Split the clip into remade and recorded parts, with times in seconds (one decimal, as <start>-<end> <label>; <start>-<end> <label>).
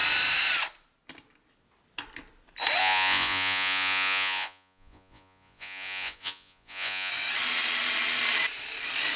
0.0-2.8 recorded; 2.8-7.1 remade; 7.1-9.2 recorded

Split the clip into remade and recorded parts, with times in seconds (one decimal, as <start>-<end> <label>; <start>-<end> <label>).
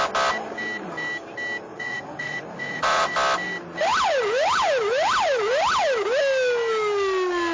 0.0-1.7 recorded; 1.7-3.1 remade; 3.1-7.5 recorded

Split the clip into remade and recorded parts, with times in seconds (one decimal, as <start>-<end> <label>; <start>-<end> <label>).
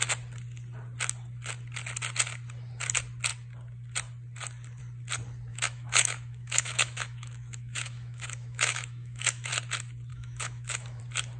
0.0-5.5 recorded; 5.5-9.5 remade; 9.5-10.1 recorded; 10.1-11.0 remade; 11.0-11.4 recorded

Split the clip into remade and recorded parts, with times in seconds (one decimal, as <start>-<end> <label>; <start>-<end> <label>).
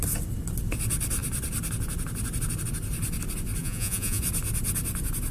0.0-3.6 recorded; 3.6-4.2 remade; 4.2-5.3 recorded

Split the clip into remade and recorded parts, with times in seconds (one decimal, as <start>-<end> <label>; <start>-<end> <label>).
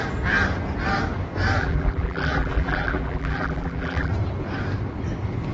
0.0-1.6 recorded; 1.6-4.1 remade; 4.1-5.5 recorded